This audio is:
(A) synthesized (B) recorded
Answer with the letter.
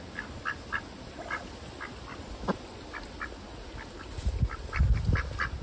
B